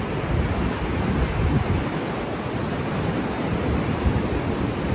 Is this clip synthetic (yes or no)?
no